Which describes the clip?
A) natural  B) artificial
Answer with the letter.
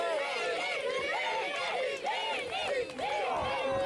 A